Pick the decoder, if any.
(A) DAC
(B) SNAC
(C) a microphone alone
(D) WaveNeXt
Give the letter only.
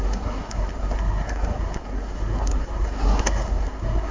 B